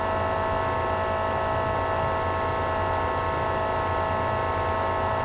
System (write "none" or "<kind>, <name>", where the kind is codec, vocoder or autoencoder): none